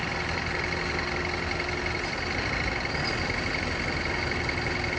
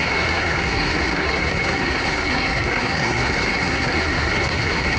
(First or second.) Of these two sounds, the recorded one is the first